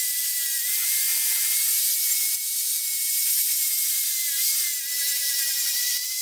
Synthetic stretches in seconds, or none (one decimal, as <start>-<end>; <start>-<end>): none